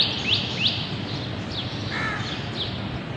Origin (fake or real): real